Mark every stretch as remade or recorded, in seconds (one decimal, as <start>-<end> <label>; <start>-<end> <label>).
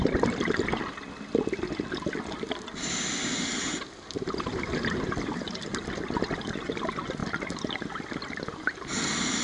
0.0-9.4 recorded